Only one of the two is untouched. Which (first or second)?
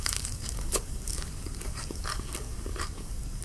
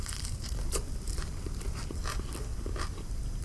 second